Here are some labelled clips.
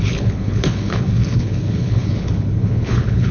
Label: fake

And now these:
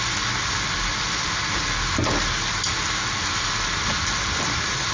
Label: real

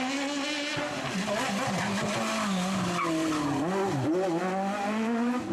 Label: real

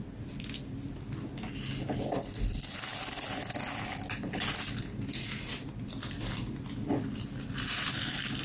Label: real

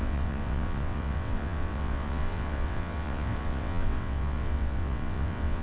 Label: fake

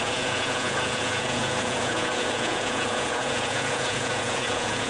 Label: fake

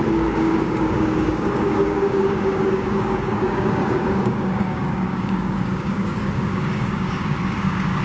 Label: fake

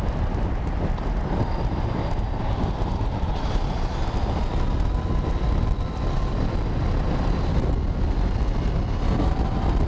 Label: fake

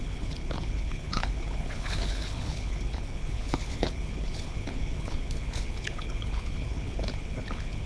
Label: fake